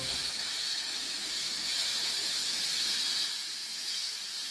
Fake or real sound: fake